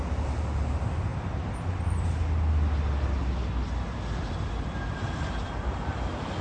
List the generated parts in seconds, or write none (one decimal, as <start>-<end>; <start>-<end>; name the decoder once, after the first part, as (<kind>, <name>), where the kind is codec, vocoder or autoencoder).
none